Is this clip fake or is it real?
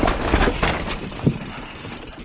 real